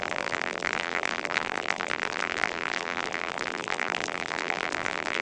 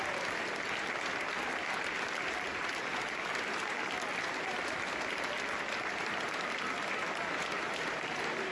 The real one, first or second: second